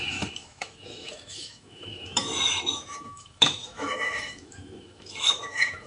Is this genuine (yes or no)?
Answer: no